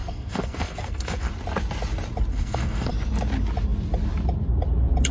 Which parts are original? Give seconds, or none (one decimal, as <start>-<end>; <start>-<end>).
1.3-2.3; 2.9-5.1